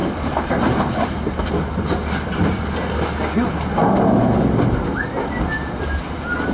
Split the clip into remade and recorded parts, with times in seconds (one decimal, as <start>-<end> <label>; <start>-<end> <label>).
0.0-0.8 remade; 0.8-6.5 recorded